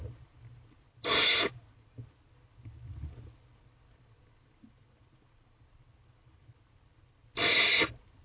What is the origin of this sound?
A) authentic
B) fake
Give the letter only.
A